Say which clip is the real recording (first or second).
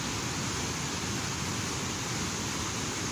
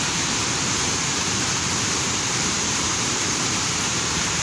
first